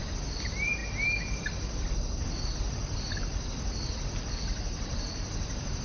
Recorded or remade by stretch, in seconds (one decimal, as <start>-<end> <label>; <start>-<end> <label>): 0.0-5.8 recorded